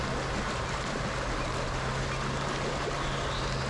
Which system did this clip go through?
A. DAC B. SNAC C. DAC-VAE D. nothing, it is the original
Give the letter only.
D